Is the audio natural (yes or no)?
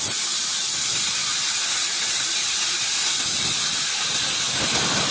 yes